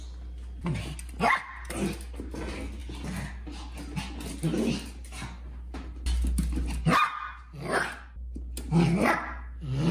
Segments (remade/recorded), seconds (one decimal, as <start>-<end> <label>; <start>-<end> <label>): 0.0-9.9 recorded